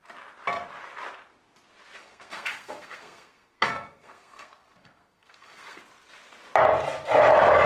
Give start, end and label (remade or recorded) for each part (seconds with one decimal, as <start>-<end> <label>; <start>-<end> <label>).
0.0-2.0 recorded; 2.0-5.8 remade; 5.8-7.7 recorded